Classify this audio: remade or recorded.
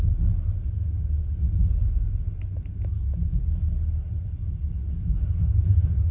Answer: recorded